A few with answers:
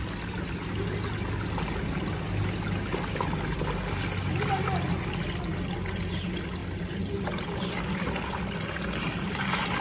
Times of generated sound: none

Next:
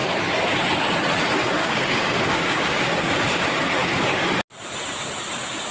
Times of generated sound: 1.6-3.4 (codec, DAC); 3.8-4.3

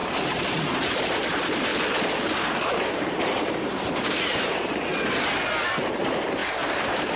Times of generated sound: 0.0-1.7 (vocoder, BigVGAN v2); 2.4-4.9; 5.8-7.2

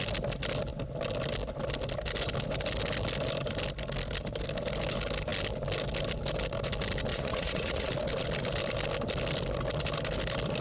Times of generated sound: 7.1-7.9 (vocoder, Vocos)